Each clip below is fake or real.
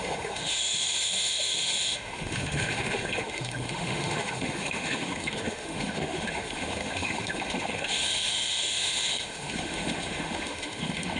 fake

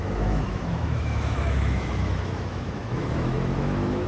fake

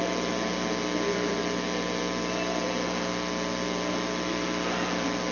real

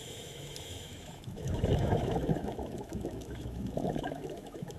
fake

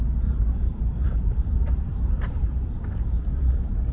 fake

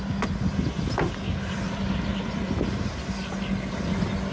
real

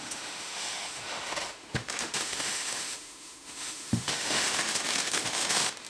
fake